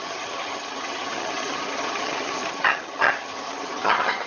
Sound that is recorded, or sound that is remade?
remade